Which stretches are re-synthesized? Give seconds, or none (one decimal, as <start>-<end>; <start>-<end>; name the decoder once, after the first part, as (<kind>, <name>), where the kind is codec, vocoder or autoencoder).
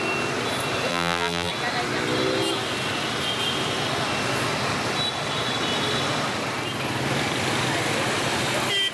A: 0.9-1.5 (vocoder, BigVGAN v2)